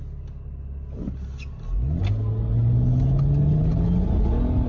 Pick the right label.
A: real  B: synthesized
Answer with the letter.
A